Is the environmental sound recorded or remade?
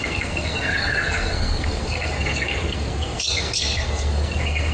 remade